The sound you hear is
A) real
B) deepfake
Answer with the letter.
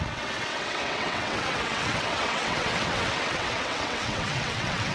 B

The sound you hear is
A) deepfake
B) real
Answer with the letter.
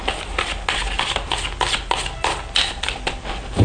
B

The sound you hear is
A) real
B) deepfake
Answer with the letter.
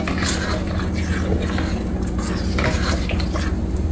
A